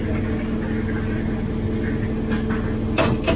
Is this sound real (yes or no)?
yes